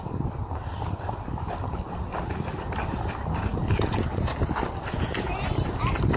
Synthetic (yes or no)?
no